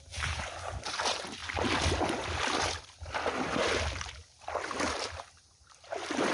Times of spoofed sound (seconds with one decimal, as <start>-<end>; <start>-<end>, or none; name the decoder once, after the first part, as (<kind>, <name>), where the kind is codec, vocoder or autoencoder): 0.0-1.4 (vocoder, BigVGAN v2); 5.2-6.3